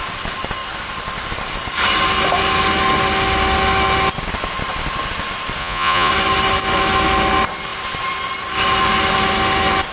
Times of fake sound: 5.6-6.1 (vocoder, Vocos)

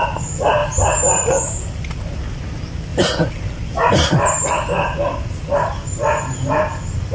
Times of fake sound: 0.6-2.2 (vocoder, BigVGAN v2); 2.9-7.1

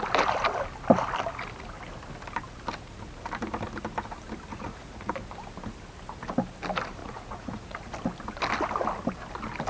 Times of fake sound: 4.5-5.1 (vocoder, Vocos); 7.0-7.9

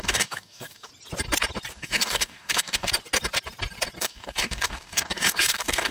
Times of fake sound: 0.0-0.9 (codec, DAC); 1.7-2.9; 4.0-5.9

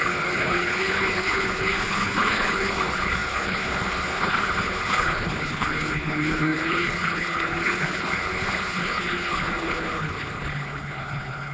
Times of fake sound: 0.0-11.5 (codec, HILCodec)

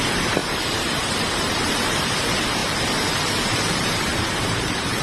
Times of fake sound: 0.0-5.0 (vocoder, BigVGAN v2)

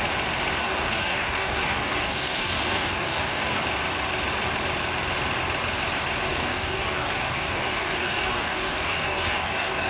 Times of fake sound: 0.6-3.6 (codec, DAC); 6.3-9.9

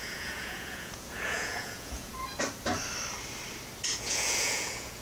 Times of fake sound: 0.0-2.1 (vocoder, Vocos); 3.9-5.0